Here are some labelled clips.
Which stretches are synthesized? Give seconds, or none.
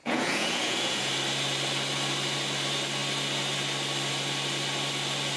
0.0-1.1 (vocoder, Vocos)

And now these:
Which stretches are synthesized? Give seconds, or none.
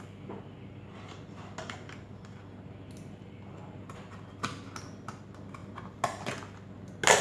none